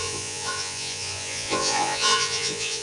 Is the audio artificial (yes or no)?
yes